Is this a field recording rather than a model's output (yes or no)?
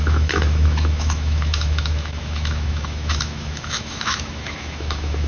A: no